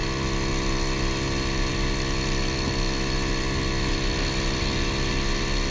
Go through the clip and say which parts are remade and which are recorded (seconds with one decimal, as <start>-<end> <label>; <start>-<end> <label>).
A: 0.0-5.7 recorded